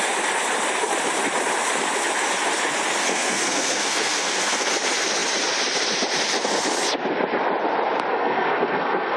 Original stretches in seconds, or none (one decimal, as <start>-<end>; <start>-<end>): 0.0-3.0; 4.7-8.1